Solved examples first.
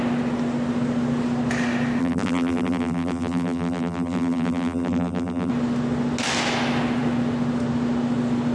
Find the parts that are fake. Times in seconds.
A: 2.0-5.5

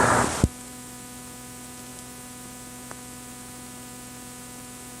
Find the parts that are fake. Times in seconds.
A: none

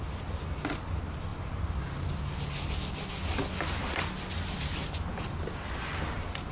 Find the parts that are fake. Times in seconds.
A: none

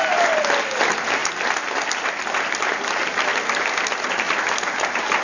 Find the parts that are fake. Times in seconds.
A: none

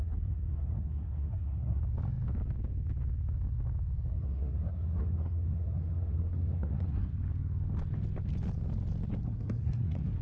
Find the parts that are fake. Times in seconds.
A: 0.0-1.8; 4.1-7.1; 9.2-10.2

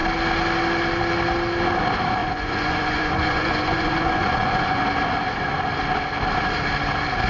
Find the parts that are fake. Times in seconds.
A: 2.2-4.8